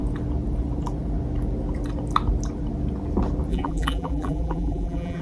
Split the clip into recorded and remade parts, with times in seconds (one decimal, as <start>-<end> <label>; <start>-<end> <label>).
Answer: 0.0-3.5 recorded; 3.5-5.2 remade